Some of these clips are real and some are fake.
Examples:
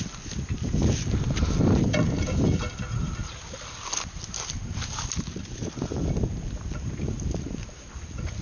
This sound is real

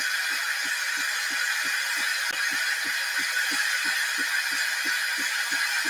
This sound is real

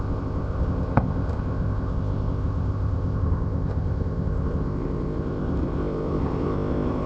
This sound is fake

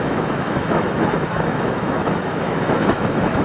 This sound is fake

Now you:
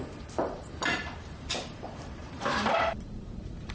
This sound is fake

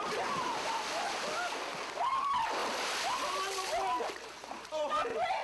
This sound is real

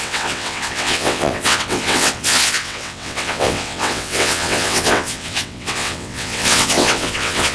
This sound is fake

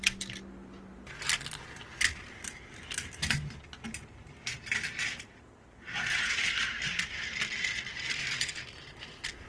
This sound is real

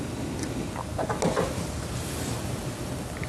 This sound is real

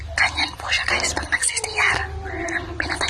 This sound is real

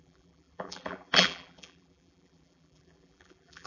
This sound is fake